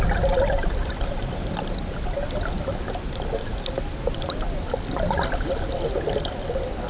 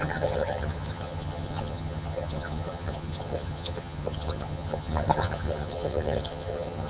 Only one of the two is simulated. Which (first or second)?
second